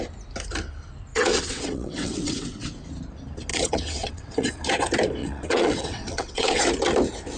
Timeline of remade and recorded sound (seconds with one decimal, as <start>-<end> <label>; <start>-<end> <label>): 0.0-1.1 recorded; 1.1-2.7 remade; 2.7-3.5 recorded; 3.5-4.5 remade; 4.5-5.2 recorded; 5.2-6.6 remade; 6.6-7.4 recorded